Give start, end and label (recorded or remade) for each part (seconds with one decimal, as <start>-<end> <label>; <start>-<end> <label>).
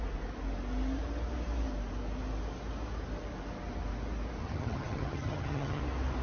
0.0-4.4 recorded; 4.4-5.8 remade; 5.8-6.2 recorded